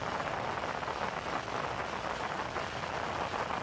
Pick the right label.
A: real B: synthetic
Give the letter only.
A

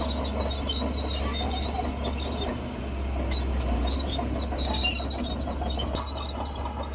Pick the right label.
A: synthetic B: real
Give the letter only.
B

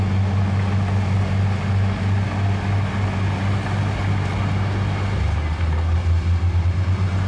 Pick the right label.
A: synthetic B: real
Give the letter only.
B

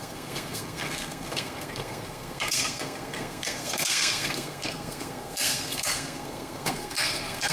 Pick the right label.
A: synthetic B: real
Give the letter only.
A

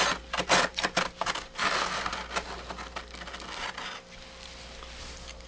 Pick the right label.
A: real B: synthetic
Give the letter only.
A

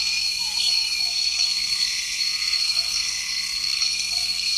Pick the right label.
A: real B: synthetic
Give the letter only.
B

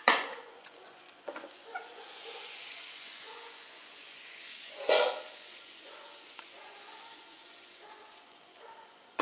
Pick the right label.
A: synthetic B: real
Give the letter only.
A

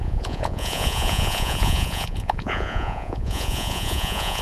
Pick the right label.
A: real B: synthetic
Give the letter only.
B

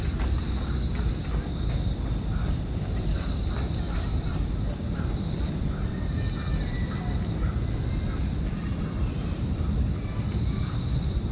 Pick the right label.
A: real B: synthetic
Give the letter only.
A